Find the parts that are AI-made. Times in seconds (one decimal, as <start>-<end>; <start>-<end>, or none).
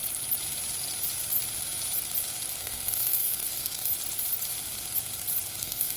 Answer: 2.6-3.9; 5.6-6.0